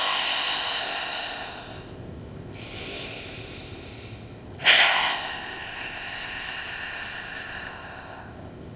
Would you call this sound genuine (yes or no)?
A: no